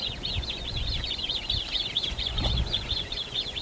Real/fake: fake